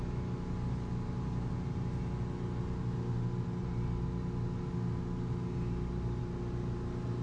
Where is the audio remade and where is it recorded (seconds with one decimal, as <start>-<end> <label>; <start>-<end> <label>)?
0.0-7.2 recorded